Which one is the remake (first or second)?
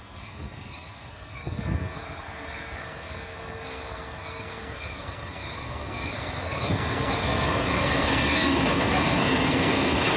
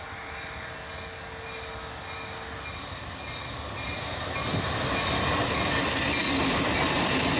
first